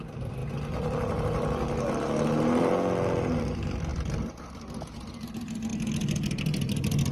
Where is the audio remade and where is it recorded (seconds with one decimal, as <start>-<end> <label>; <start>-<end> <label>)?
0.0-7.1 recorded